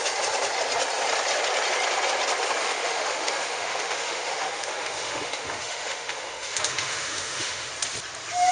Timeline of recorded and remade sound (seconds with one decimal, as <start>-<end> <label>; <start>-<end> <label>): 0.0-2.6 recorded; 2.6-7.7 remade; 7.7-8.5 recorded